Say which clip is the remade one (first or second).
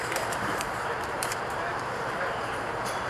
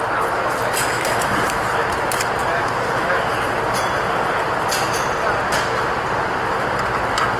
first